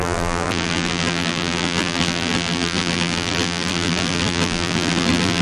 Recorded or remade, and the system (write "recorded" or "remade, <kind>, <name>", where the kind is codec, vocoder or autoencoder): remade, vocoder, BigVGAN v2